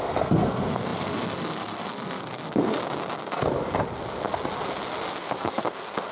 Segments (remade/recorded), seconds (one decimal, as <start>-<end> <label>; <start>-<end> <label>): 0.0-2.8 remade; 2.8-5.1 recorded; 5.1-6.1 remade